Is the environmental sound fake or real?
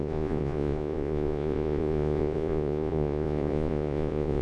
fake